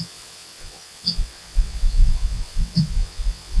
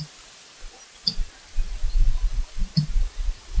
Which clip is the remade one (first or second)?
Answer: first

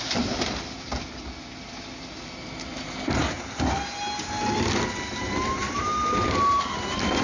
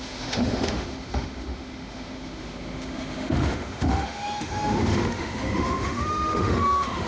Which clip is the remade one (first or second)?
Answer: second